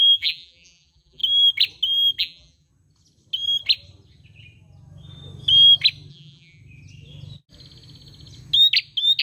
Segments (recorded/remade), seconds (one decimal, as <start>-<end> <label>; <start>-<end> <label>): 0.0-1.2 remade; 1.2-2.2 recorded; 2.2-2.7 remade; 2.7-6.1 recorded; 6.1-6.6 remade; 6.6-9.2 recorded